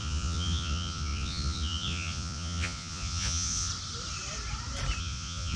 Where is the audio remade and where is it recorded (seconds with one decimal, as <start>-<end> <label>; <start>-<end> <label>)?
0.0-3.7 remade; 3.7-5.0 recorded; 5.0-5.6 remade